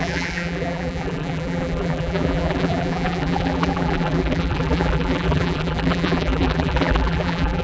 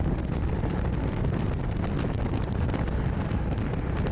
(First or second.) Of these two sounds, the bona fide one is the second